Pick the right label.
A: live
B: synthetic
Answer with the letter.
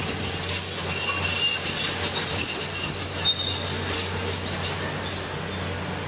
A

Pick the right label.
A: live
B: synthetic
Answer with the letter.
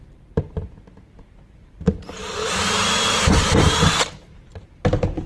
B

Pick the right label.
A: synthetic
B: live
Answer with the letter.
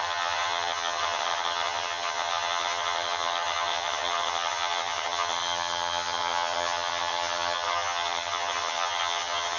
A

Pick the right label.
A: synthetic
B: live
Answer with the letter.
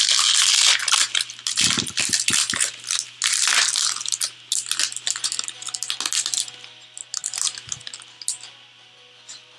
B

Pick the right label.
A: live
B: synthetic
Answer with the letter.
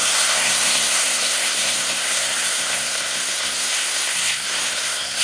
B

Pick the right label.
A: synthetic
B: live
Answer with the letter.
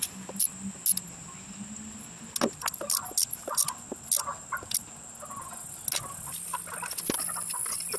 B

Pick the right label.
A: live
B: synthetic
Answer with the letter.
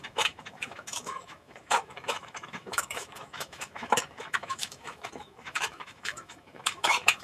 B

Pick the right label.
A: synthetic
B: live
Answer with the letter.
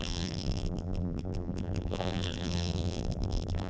A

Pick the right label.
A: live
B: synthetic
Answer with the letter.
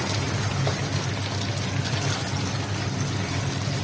A